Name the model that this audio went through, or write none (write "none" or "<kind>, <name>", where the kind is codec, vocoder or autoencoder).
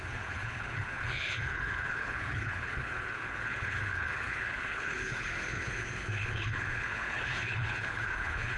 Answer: codec, HILCodec